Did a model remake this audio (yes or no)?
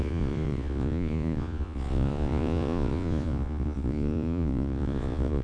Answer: yes